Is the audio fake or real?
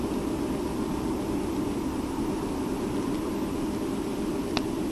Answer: real